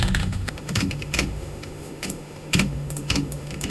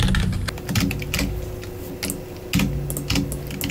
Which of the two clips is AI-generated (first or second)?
first